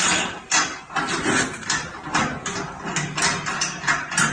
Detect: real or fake real